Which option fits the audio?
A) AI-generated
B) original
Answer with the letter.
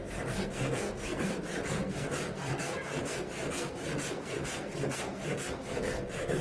A